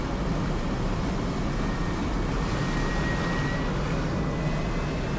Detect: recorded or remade recorded